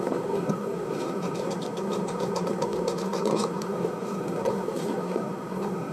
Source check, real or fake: fake